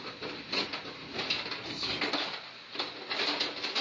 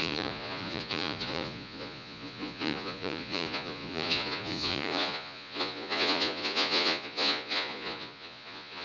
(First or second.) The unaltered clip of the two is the first